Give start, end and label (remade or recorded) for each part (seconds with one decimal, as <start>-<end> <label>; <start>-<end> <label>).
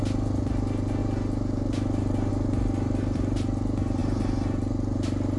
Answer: 0.0-5.4 recorded